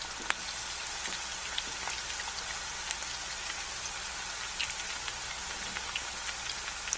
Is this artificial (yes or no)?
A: no